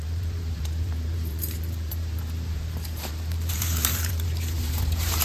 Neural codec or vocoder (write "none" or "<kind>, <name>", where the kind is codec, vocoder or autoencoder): vocoder, BigVGAN v2